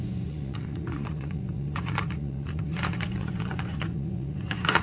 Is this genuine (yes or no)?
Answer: no